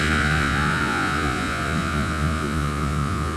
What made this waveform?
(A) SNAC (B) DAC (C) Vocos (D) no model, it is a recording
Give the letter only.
C